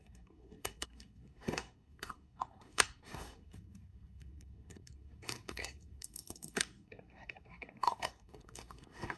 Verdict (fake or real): fake